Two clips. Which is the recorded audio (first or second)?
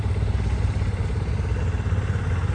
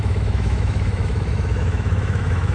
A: first